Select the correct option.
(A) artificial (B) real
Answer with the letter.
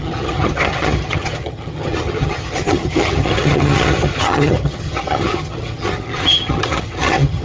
A